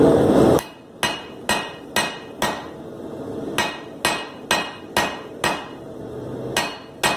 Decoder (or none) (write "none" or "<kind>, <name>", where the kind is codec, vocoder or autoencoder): none